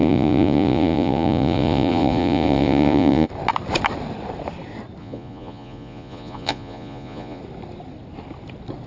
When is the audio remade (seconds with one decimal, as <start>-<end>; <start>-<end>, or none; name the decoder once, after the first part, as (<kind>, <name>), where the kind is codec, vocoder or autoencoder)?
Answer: 0.0-3.3 (vocoder, Vocos); 5.0-7.4